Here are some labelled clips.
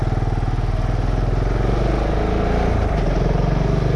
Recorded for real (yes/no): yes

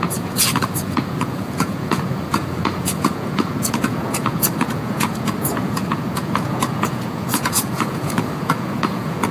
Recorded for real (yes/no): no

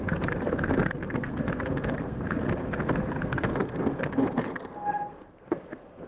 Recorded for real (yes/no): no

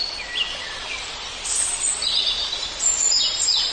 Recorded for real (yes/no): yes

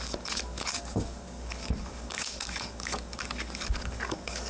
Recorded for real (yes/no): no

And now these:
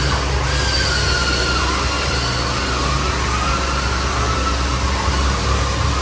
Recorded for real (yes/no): yes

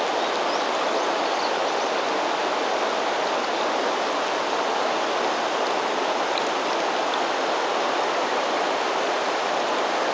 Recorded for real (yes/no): yes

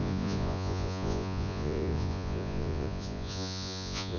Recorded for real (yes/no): no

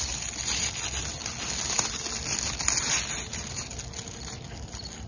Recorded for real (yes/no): yes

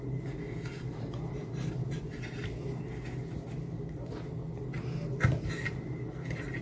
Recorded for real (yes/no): yes